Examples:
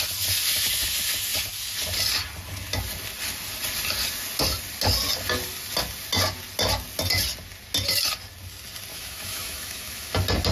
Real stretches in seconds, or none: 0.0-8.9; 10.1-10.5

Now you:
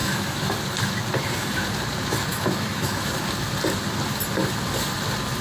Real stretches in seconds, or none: 0.5-2.3; 3.1-5.4

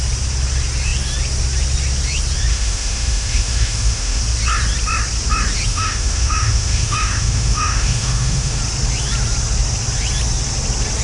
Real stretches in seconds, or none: 0.0-2.5; 4.2-5.7; 8.6-11.0

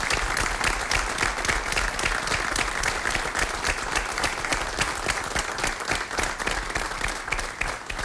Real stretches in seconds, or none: 0.0-8.0

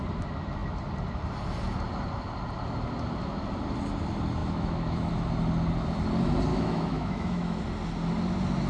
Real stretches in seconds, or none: 0.0-4.4; 5.1-6.5; 7.6-8.7

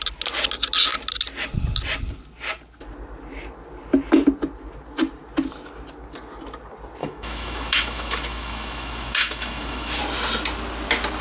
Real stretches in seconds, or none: 0.0-7.0; 10.0-11.2

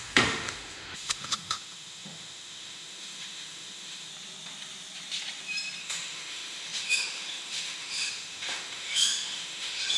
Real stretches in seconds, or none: 4.1-5.8